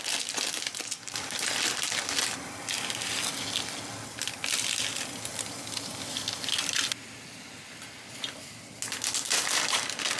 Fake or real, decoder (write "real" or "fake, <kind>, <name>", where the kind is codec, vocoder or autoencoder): real